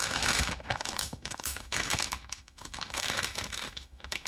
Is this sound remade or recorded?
remade